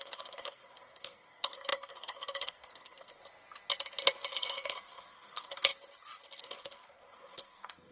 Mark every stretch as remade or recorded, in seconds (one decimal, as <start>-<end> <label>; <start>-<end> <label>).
0.0-3.2 remade; 3.2-4.4 recorded; 4.4-5.7 remade; 5.7-6.4 recorded; 6.4-7.9 remade